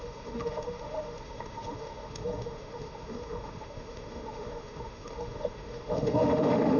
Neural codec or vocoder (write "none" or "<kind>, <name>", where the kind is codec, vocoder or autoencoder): autoencoder, DAC-VAE